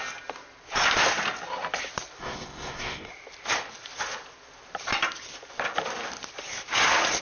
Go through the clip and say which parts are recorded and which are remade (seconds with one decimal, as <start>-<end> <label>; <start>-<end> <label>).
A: 0.0-2.2 recorded; 2.2-3.1 remade; 3.1-7.2 recorded